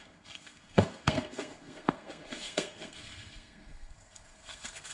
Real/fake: fake